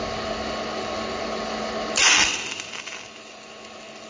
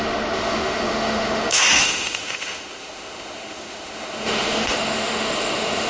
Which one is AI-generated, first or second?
second